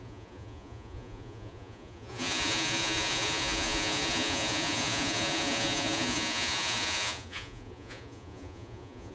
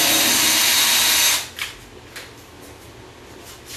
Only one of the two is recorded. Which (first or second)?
second